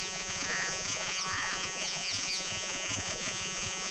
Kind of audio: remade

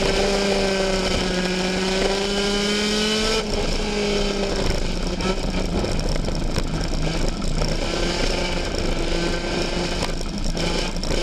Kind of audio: recorded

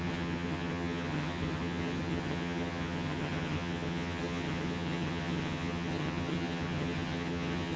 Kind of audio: remade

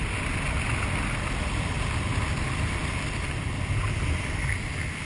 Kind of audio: recorded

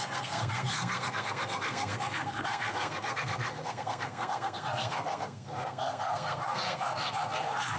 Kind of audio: remade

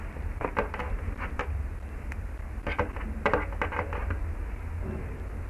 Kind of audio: recorded